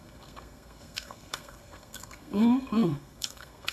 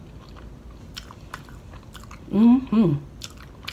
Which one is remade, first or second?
first